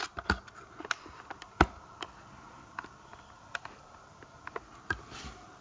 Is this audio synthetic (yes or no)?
no